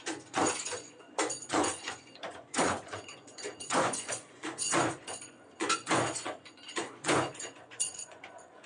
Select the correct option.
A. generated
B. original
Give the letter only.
A